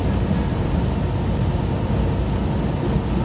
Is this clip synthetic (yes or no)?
no